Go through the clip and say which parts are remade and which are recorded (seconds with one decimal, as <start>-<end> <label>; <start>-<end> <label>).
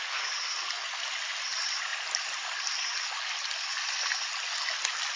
0.0-5.2 recorded